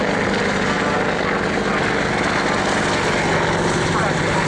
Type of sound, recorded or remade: recorded